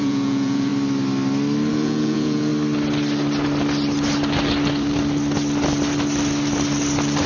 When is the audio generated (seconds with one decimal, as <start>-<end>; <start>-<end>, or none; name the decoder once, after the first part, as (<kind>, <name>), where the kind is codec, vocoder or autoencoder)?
0.0-0.7 (vocoder, Vocos); 1.7-2.5